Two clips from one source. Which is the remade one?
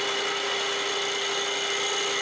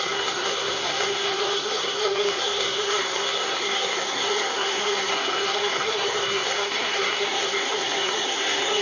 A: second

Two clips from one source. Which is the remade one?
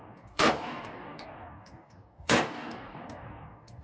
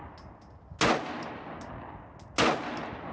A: first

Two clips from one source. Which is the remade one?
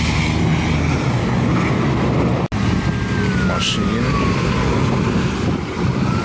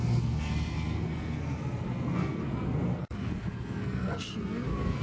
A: second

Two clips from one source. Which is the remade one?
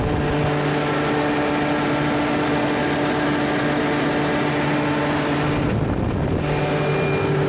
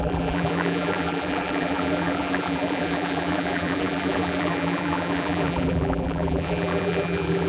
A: second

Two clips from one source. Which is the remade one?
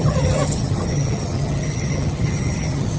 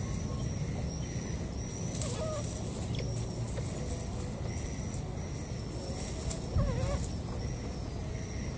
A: first